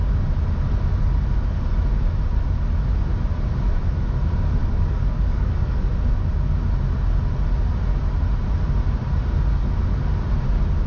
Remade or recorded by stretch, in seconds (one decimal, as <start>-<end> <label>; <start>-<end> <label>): 0.0-4.6 recorded; 4.6-5.9 remade; 5.9-10.9 recorded